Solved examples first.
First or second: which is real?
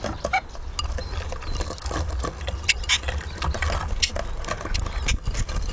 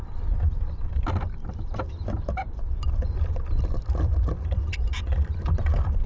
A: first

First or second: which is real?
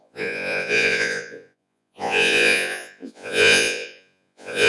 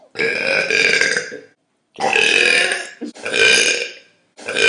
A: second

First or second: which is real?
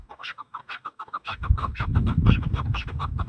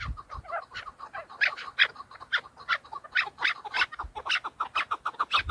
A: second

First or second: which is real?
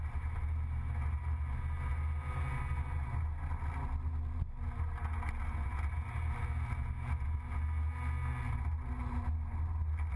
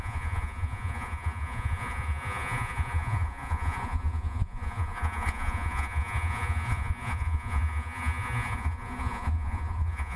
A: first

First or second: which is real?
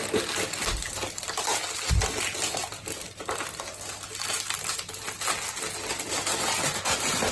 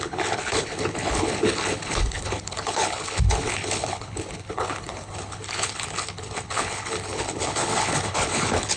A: first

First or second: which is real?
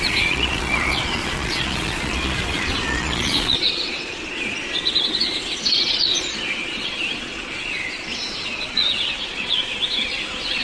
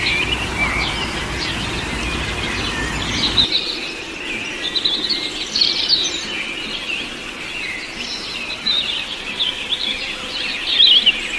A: second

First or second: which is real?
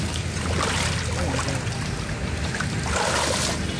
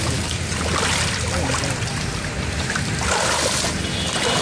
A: first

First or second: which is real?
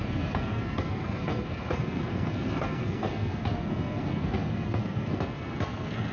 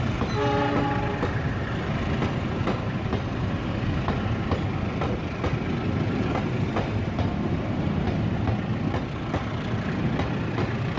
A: second